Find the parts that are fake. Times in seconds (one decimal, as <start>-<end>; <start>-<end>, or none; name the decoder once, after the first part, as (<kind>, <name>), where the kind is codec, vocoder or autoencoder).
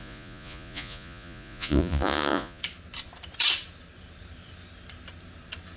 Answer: 0.0-2.6 (vocoder, Vocos)